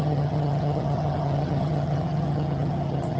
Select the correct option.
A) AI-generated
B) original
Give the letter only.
A